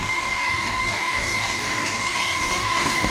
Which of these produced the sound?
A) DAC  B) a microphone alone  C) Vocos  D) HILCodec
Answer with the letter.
A